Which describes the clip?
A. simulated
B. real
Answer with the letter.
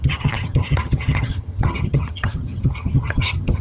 A